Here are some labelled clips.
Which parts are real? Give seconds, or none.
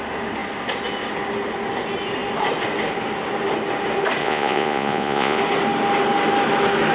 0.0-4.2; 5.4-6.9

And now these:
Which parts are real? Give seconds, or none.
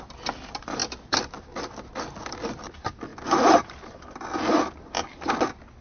0.0-5.8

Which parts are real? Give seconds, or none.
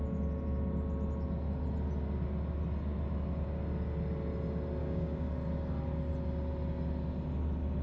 0.0-4.8; 5.3-7.8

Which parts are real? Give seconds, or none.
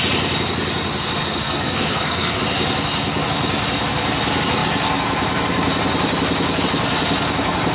0.0-1.2; 2.4-7.7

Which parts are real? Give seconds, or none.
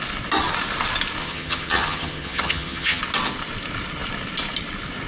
0.0-1.2; 3.0-5.1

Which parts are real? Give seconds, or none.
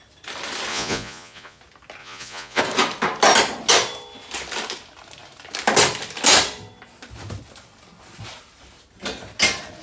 0.0-0.7; 1.6-2.0; 2.6-9.8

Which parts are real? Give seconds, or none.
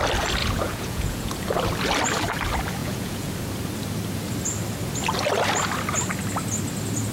0.0-0.4; 1.3-2.8; 3.3-7.1